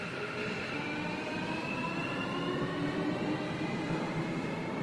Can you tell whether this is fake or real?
real